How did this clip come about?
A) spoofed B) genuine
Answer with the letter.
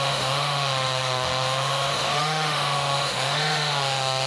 A